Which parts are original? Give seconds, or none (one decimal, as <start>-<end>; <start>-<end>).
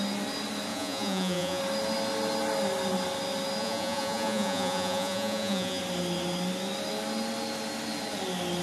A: 0.0-0.7; 1.6-3.6; 5.8-8.6